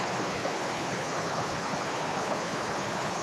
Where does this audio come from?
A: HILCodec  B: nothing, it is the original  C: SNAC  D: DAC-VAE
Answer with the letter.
A